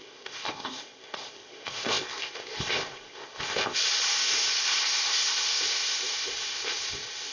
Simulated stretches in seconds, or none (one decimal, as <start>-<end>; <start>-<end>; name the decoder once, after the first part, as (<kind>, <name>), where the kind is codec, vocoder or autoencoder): 0.0-7.3 (codec, ZipCodec)